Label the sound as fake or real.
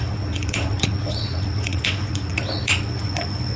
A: fake